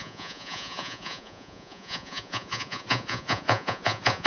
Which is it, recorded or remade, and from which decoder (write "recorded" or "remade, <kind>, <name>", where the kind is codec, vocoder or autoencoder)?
remade, vocoder, Vocos